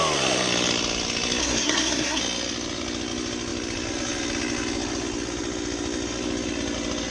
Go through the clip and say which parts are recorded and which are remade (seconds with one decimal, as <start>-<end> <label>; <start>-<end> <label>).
0.0-1.4 recorded; 1.4-2.2 remade; 2.2-7.1 recorded